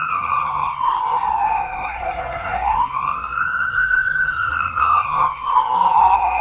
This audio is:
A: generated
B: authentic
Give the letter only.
A